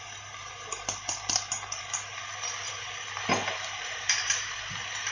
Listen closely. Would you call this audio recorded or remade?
recorded